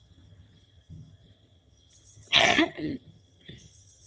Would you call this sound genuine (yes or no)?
no